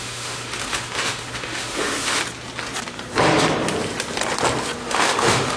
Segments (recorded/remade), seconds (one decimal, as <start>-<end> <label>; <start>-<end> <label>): 0.0-2.2 remade; 2.2-4.8 recorded; 4.8-5.6 remade